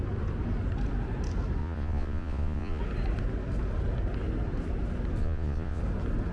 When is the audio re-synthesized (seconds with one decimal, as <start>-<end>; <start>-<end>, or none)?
1.6-2.8; 5.2-5.8